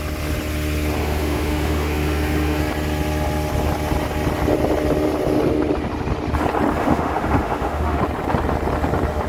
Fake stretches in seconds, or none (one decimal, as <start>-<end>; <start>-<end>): 1.0-2.6; 6.8-8.0